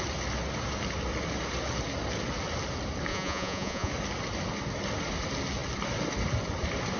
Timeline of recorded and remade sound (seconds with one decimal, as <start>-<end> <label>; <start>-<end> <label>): 0.0-3.1 recorded; 3.1-3.9 remade; 3.9-7.0 recorded